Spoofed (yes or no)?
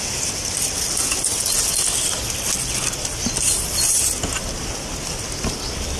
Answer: no